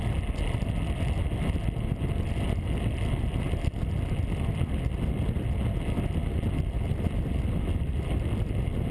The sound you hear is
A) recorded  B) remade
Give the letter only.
A